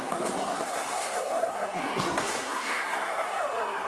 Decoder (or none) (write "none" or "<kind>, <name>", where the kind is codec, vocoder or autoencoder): codec, SNAC